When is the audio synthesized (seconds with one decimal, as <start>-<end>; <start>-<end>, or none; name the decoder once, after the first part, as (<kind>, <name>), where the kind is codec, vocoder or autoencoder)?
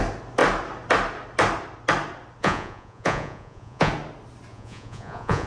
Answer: 2.4-3.9 (vocoder, Vocos); 4.5-5.5